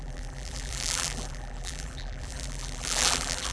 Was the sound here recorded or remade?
remade